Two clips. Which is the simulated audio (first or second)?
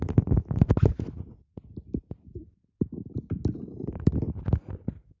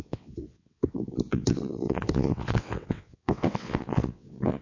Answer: second